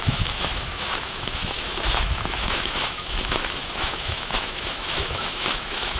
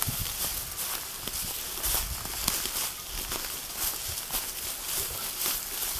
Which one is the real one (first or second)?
second